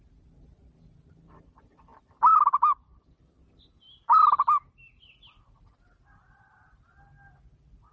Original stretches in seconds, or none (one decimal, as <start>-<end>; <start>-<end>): 0.0-7.9